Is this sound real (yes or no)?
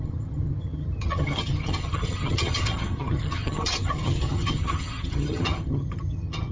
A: no